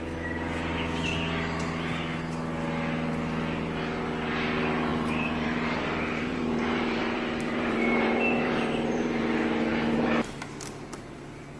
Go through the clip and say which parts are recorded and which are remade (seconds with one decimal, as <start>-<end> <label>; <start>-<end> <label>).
0.0-4.9 recorded; 4.9-9.2 remade; 9.2-9.7 recorded; 9.7-10.4 remade; 10.4-11.6 recorded